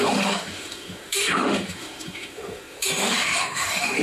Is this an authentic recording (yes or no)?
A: no